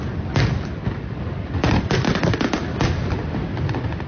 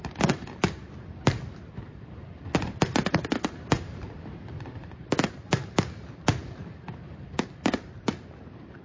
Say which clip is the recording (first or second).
first